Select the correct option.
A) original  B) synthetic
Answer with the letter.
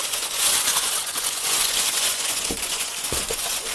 B